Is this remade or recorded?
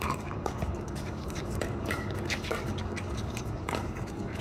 remade